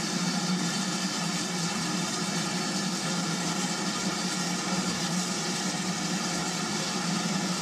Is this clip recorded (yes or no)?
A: yes